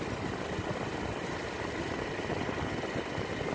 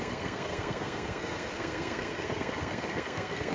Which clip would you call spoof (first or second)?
second